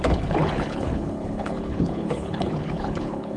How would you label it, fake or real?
fake